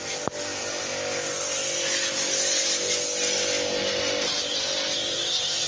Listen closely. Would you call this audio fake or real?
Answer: real